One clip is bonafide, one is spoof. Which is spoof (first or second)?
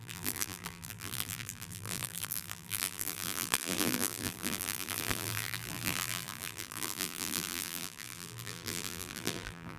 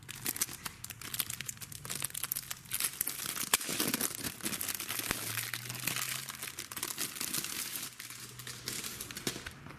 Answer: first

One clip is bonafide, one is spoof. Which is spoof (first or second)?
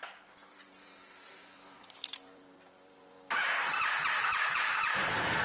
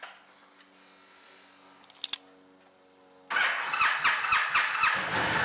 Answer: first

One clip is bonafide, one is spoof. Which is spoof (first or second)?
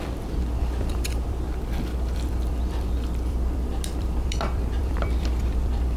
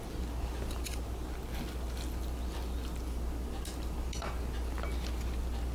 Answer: first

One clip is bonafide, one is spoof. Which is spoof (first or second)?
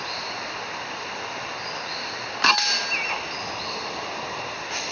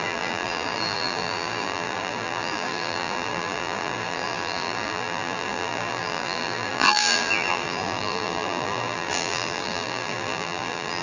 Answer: second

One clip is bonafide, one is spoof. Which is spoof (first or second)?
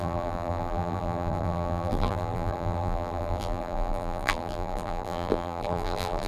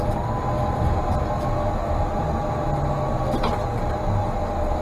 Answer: first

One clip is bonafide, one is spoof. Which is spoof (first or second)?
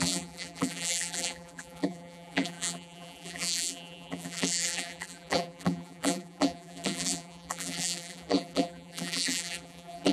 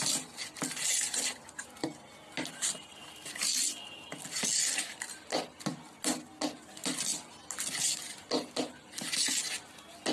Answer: first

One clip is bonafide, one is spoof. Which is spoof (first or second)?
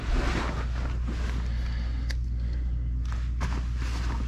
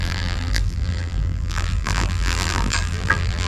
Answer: second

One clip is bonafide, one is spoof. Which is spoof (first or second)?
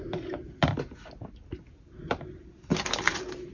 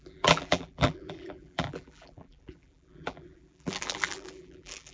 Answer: second